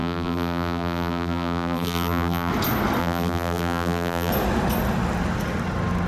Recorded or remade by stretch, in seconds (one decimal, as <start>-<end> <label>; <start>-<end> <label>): 0.0-2.5 remade; 2.5-3.0 recorded; 3.0-4.3 remade; 4.3-6.1 recorded